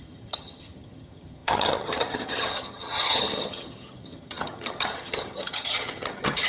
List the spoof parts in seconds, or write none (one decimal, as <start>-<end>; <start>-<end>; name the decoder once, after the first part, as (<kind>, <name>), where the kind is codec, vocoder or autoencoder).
0.0-6.5 (vocoder, HiFi-GAN)